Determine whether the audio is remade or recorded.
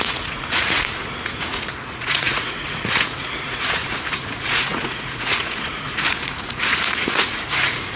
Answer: remade